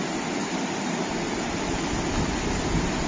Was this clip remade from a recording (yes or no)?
no